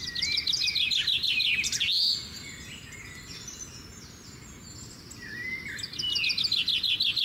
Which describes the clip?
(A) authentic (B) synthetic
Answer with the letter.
A